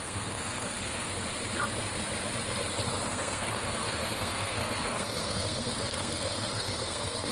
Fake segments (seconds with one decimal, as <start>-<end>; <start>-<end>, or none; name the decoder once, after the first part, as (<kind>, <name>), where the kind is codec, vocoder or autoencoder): 0.0-1.1 (codec, SNAC); 3.1-7.3